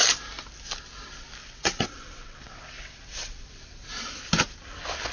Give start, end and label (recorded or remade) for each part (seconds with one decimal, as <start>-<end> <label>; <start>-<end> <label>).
0.0-1.4 recorded; 1.4-3.9 remade; 3.9-5.1 recorded